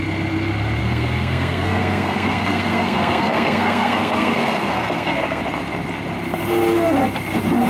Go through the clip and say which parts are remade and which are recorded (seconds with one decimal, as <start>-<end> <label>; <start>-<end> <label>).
0.0-0.8 recorded; 0.8-5.4 remade; 5.4-7.7 recorded